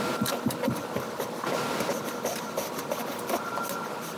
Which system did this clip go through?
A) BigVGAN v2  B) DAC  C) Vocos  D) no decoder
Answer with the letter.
D